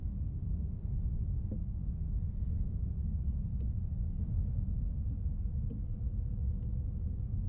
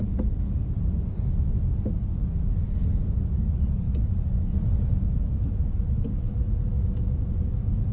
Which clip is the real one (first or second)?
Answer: first